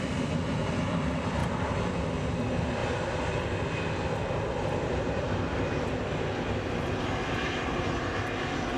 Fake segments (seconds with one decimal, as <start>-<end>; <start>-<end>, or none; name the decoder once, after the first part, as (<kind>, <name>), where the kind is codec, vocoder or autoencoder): none